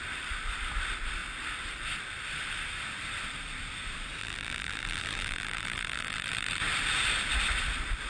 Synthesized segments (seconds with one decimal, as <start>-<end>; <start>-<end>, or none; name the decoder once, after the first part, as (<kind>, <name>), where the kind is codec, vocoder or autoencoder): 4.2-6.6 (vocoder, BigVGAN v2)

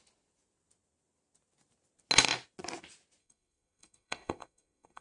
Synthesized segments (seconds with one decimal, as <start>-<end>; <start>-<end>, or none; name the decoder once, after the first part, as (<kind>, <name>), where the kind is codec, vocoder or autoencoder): 3.2-5.0 (codec, SNAC)

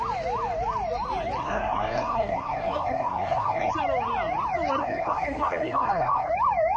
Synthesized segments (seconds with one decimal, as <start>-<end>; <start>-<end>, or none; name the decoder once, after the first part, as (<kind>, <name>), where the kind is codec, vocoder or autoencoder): 1.4-3.7 (codec, SNAC); 4.8-6.3

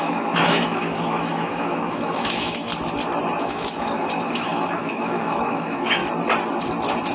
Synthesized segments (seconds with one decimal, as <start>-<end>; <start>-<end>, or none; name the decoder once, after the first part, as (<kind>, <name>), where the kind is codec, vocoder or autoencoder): 0.0-2.7 (autoencoder, DAC-VAE); 3.4-6.0

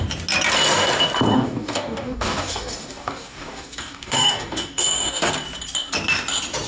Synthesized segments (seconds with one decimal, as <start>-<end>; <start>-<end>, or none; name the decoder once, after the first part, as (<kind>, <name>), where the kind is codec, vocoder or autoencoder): 1.3-5.3 (codec, DAC)